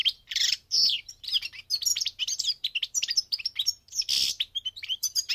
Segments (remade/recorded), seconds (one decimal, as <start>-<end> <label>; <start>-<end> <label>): 0.0-1.1 remade; 1.1-1.9 recorded; 1.9-5.3 remade